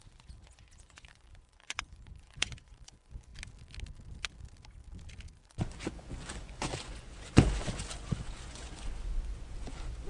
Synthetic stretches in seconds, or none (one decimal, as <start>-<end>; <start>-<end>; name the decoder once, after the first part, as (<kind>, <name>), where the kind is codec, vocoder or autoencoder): 0.0-3.3 (vocoder, Vocos); 5.5-10.1